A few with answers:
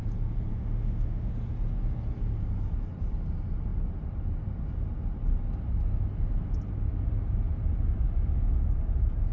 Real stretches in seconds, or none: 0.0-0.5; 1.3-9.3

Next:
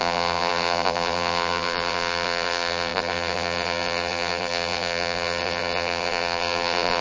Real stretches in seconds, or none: none

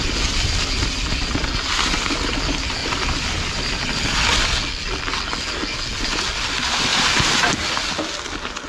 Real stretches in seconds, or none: 0.0-2.8; 4.0-8.7

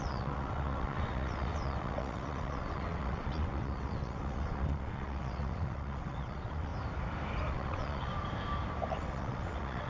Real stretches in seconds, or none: 6.7-7.5; 8.1-8.9

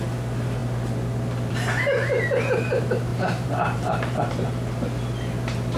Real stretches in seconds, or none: 0.0-3.1; 4.3-5.8

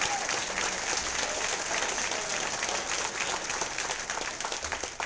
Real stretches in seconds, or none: 0.0-5.1